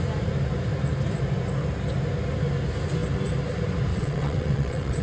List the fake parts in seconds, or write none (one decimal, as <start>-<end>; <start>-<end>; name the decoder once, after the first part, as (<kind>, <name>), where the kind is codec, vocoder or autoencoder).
3.9-5.0 (vocoder, WaveNeXt)